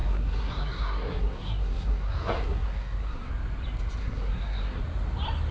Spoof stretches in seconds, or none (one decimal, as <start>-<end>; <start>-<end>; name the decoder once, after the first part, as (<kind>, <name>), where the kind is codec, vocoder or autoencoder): 0.0-3.3 (codec, SNAC); 4.0-4.8